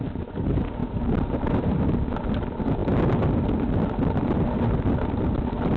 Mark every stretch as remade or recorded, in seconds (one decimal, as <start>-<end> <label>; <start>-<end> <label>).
0.0-0.8 recorded; 0.8-1.7 remade; 1.7-5.8 recorded